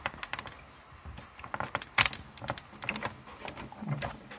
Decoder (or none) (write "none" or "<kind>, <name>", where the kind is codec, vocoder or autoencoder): none